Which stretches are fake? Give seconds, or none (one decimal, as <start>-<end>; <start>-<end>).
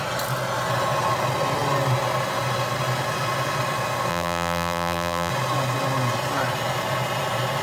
4.1-5.3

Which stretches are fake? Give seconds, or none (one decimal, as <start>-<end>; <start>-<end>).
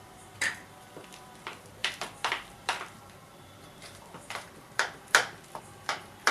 0.0-6.3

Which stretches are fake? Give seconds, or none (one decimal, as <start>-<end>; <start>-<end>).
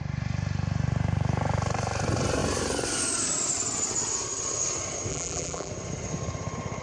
5.1-5.7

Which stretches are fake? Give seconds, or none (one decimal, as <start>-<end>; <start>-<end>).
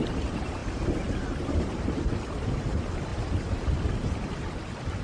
0.6-2.5